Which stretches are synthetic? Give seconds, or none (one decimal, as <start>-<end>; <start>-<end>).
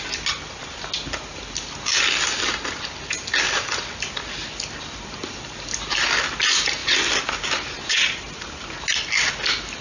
6.8-8.6